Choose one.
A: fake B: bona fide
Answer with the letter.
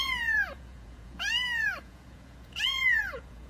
A